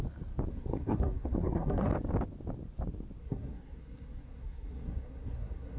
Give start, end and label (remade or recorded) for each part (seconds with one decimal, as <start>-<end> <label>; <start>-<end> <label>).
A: 0.0-0.5 recorded; 0.5-1.9 remade; 1.9-3.2 recorded; 3.2-5.8 remade